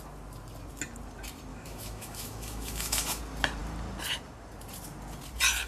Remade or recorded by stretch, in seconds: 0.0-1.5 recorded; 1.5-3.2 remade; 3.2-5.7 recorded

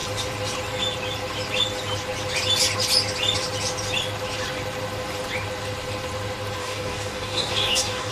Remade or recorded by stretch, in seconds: 0.0-6.6 recorded; 6.6-8.1 remade

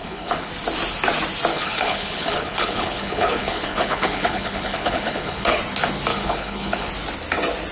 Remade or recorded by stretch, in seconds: 0.0-0.5 remade; 0.5-1.5 recorded; 1.5-5.6 remade; 5.6-6.1 recorded; 6.1-6.9 remade; 6.9-7.7 recorded

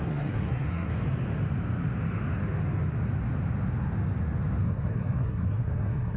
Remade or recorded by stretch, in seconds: 0.0-0.9 remade; 0.9-4.6 recorded; 4.6-6.2 remade

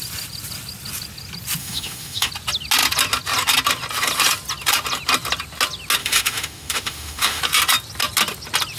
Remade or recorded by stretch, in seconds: 0.0-1.6 recorded; 1.6-2.3 remade; 2.3-6.0 recorded; 6.0-7.4 remade; 7.4-8.8 recorded